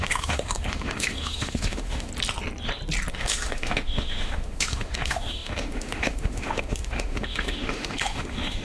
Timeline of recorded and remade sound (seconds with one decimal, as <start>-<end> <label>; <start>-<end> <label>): 0.0-2.1 remade; 2.1-3.1 recorded; 3.1-8.6 remade